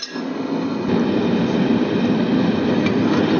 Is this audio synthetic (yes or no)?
no